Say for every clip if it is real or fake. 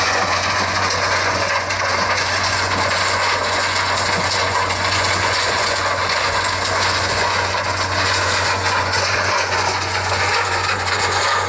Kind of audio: fake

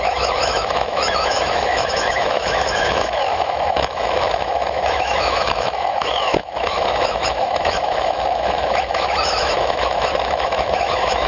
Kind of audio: fake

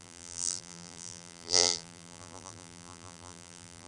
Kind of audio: fake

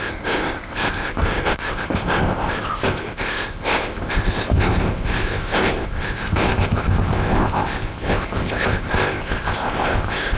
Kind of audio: fake